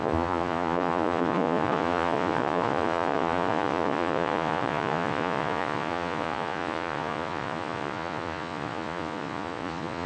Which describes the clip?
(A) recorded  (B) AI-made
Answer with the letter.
B